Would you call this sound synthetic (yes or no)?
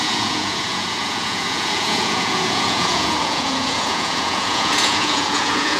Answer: yes